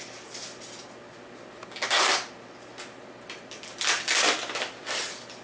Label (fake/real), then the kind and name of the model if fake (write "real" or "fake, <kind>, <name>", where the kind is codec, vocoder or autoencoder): real